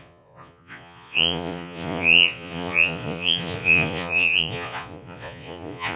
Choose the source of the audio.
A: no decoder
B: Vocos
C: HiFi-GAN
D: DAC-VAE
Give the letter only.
B